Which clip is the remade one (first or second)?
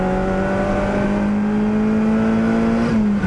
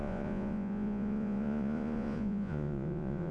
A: second